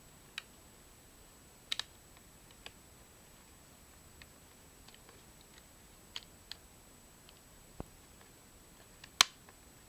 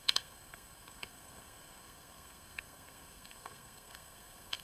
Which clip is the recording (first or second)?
first